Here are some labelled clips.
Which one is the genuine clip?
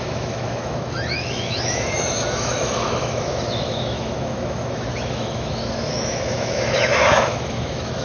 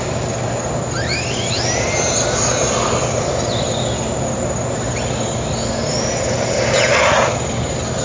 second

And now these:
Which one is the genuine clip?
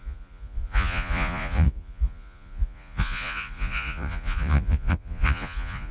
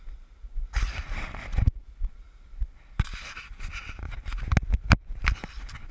second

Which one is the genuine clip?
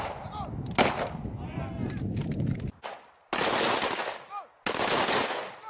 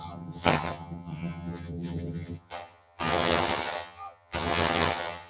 first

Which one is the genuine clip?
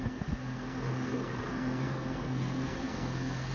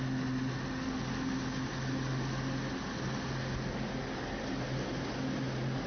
second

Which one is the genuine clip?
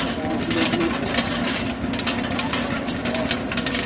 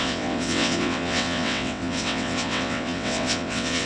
first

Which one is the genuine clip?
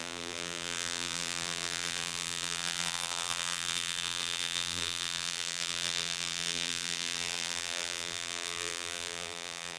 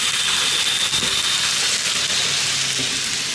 second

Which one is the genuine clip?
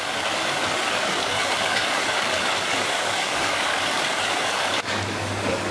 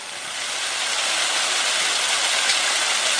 second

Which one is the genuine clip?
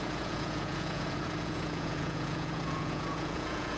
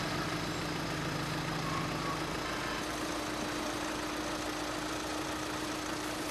second